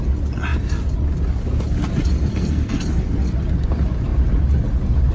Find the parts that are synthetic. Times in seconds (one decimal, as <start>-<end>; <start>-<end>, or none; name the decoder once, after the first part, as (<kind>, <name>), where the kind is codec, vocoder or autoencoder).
2.3-2.8 (codec, SNAC)